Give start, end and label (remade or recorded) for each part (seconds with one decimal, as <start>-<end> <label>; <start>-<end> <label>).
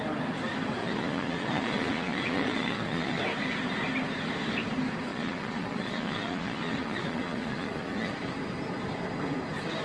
0.0-0.8 recorded; 0.8-3.2 remade; 3.2-5.1 recorded; 5.1-8.1 remade; 8.1-9.8 recorded